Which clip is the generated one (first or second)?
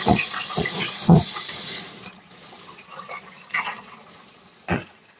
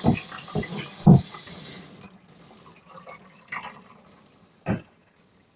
first